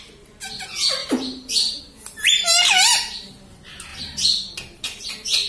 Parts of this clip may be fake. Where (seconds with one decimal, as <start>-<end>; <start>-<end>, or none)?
1.0-1.8; 2.3-3.1; 3.9-5.1